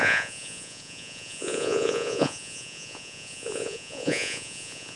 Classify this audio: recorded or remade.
remade